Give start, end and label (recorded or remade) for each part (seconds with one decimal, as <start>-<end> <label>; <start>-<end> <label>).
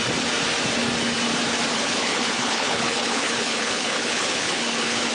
0.0-1.7 recorded; 1.7-5.1 remade